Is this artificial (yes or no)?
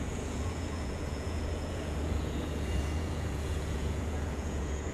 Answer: yes